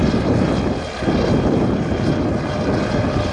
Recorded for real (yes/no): yes